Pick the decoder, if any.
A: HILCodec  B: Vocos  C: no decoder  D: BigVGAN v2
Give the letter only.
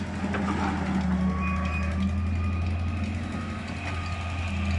C